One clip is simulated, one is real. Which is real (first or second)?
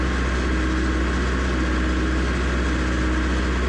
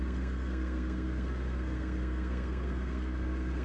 first